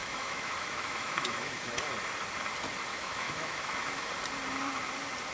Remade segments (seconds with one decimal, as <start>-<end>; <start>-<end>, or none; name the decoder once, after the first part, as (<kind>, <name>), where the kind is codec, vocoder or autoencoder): 0.0-1.8 (autoencoder, DAC-VAE); 2.9-4.1